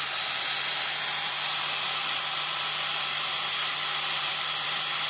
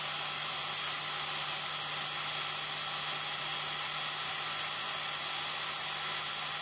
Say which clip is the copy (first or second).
first